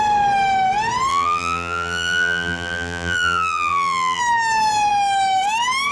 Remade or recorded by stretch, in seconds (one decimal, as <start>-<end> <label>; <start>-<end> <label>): 0.0-1.1 recorded; 1.1-4.2 remade; 4.2-5.9 recorded